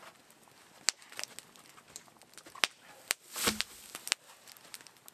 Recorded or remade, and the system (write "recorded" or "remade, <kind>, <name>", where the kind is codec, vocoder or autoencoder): recorded